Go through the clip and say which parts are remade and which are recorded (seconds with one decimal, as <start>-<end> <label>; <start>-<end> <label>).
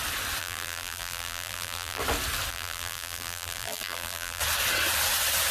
0.0-0.4 recorded; 0.4-2.0 remade; 2.0-2.5 recorded; 2.5-4.4 remade; 4.4-5.5 recorded